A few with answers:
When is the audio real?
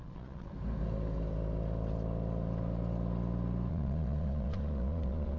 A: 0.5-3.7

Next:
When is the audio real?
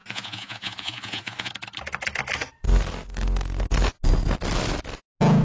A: 1.5-5.4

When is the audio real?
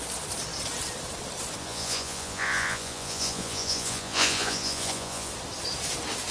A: 0.0-1.6; 5.3-6.3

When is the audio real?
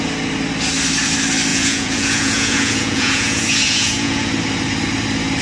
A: 0.0-1.5; 4.3-5.4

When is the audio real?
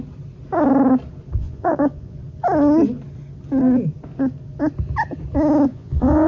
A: 0.0-1.4; 2.2-5.7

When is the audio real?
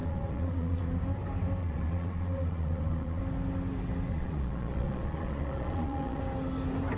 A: 0.8-1.6; 3.2-4.1; 6.2-7.0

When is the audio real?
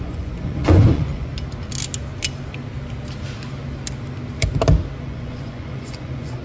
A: 1.3-5.0